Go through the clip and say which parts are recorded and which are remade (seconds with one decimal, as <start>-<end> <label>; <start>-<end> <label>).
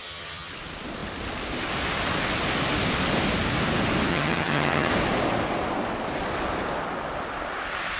0.0-0.5 remade; 0.5-4.1 recorded; 4.1-4.9 remade; 4.9-8.0 recorded